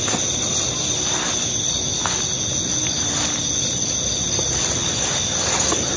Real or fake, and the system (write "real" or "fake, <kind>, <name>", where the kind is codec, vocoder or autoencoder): real